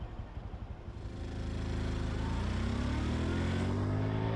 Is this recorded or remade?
recorded